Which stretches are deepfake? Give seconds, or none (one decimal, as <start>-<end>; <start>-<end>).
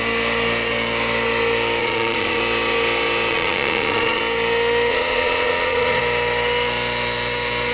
1.8-2.4; 3.3-4.2; 4.9-6.0